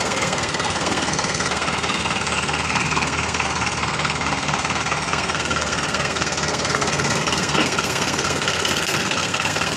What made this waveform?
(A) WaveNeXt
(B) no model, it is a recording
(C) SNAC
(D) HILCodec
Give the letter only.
C